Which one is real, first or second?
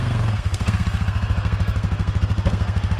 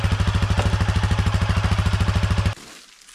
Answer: second